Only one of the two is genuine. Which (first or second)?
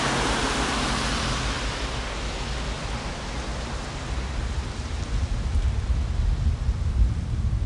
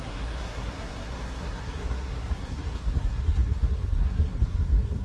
first